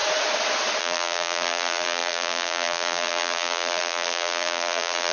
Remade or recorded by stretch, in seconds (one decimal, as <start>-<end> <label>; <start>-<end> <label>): 0.0-0.8 recorded; 0.8-5.1 remade